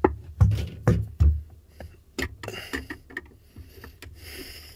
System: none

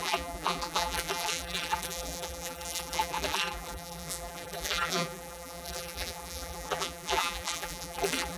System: vocoder, BigVGAN v2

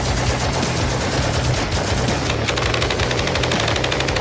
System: none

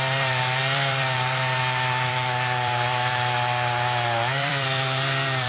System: vocoder, BigVGAN v2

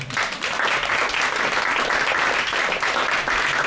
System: none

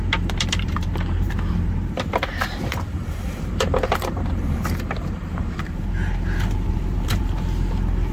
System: vocoder, BigVGAN v2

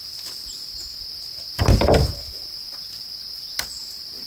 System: none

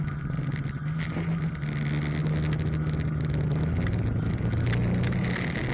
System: none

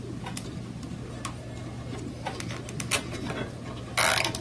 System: none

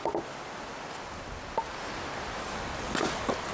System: none